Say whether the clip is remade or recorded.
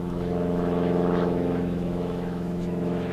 remade